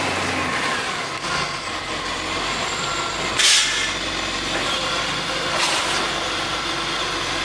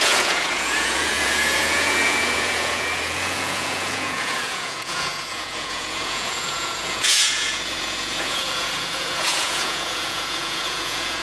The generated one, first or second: second